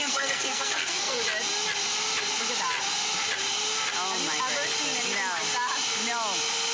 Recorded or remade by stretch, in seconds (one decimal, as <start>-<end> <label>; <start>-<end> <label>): 0.0-1.2 remade; 1.2-6.7 recorded